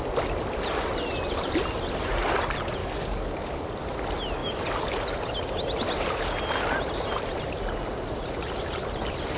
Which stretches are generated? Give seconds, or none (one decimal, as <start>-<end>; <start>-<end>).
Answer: 2.8-3.6